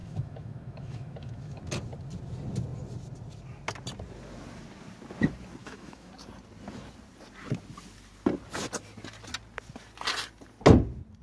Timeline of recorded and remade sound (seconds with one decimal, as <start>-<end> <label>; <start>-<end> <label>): 0.0-1.6 remade; 1.6-5.6 recorded; 5.6-6.1 remade; 6.1-11.2 recorded